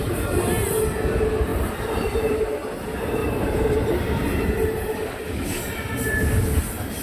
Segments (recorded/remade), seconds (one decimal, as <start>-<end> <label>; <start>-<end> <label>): 0.0-1.5 recorded; 1.5-2.4 remade; 2.4-3.2 recorded; 3.2-4.0 remade; 4.0-7.0 recorded